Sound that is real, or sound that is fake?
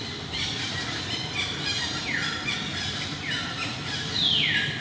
real